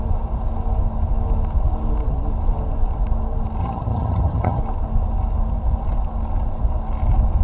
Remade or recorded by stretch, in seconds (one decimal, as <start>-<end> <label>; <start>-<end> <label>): 0.0-3.6 recorded; 3.6-4.6 remade; 4.6-7.4 recorded